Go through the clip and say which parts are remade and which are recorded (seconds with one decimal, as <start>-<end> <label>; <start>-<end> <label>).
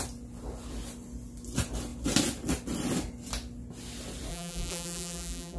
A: 0.0-4.3 recorded; 4.3-5.6 remade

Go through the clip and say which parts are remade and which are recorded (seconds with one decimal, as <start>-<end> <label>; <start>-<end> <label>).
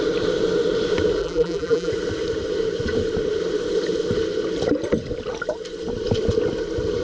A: 0.0-1.2 recorded; 1.2-1.9 remade; 1.9-7.0 recorded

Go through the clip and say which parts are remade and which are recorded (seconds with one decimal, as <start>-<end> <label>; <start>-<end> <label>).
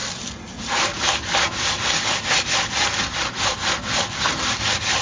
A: 0.0-3.0 recorded; 3.0-5.0 remade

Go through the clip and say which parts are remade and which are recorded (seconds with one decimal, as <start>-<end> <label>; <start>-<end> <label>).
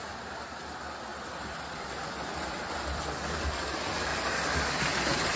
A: 0.0-1.1 recorded; 1.1-3.6 remade; 3.6-4.1 recorded; 4.1-4.7 remade; 4.7-5.4 recorded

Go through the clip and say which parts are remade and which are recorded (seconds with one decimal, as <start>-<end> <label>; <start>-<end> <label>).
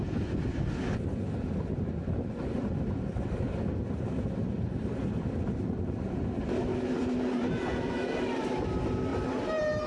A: 0.0-2.0 recorded; 2.0-3.8 remade; 3.8-6.7 recorded; 6.7-7.5 remade; 7.5-9.9 recorded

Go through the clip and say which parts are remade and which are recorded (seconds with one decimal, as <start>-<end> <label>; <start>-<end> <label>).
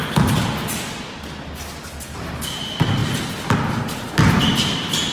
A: 0.0-5.1 recorded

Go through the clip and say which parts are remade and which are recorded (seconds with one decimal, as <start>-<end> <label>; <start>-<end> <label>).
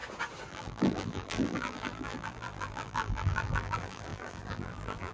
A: 0.0-0.5 recorded; 0.5-5.1 remade